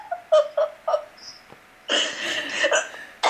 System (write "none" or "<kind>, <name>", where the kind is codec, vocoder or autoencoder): none